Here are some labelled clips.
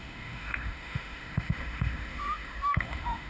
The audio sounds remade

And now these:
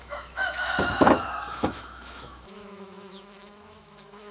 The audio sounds remade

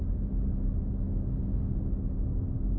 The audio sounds recorded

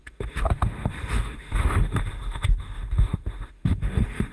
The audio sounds remade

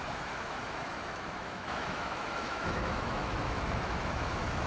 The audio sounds remade